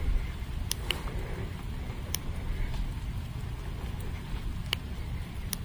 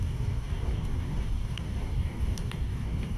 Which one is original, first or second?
first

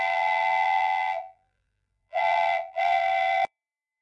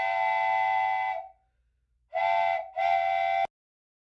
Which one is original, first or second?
second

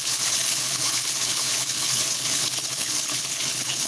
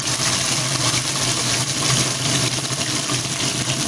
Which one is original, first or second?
second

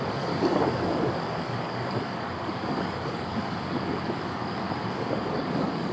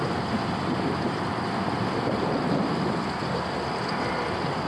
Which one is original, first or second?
second